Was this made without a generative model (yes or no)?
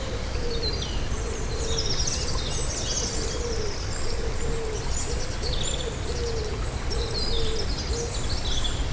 yes